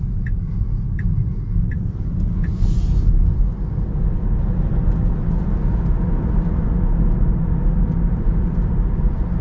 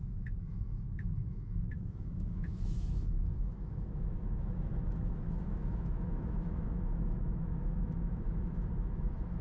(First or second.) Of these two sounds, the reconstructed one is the second